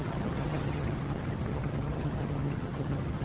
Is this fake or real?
fake